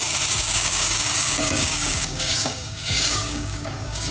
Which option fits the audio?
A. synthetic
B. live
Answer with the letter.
A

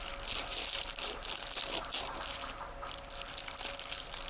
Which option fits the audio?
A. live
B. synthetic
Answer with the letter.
A